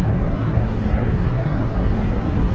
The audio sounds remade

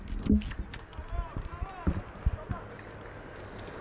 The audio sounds recorded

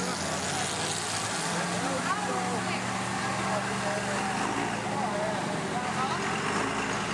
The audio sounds recorded